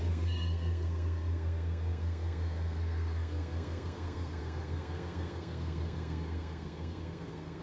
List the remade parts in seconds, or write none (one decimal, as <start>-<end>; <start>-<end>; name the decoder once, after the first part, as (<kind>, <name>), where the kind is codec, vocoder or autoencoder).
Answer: 0.0-7.6 (codec, SNAC)